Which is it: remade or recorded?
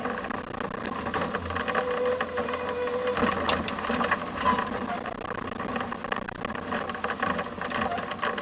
recorded